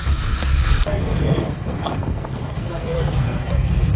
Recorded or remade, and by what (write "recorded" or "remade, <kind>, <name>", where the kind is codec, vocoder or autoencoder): remade, codec, SNAC